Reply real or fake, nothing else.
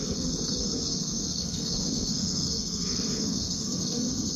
fake